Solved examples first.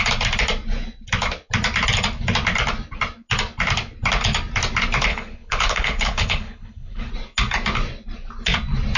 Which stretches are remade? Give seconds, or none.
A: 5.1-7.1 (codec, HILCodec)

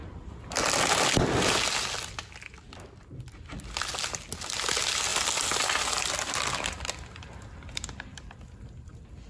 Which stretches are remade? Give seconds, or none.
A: none

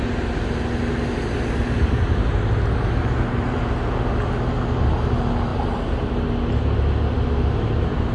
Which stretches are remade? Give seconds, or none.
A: none